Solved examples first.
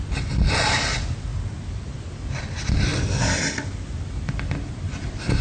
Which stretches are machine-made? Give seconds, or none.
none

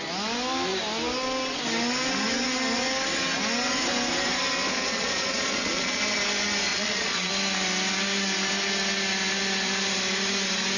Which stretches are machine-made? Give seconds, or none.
4.7-6.0 (vocoder, Vocos); 6.7-7.3

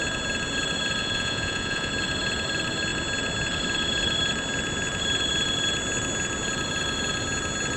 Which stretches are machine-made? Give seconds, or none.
1.0-1.9 (vocoder, Vocos)

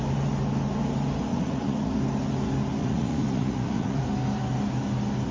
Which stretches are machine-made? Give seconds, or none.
1.3-1.9 (vocoder, Vocos); 2.8-4.0

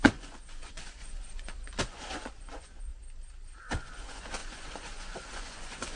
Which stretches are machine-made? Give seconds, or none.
0.0-2.9 (vocoder, Vocos); 3.6-6.0

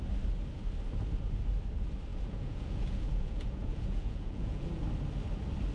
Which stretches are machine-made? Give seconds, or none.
2.1-4.8 (vocoder, Vocos)